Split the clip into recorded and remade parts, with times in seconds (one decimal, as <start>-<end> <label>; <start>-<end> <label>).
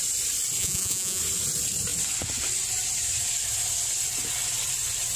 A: 0.0-0.6 recorded; 0.6-1.2 remade; 1.2-5.2 recorded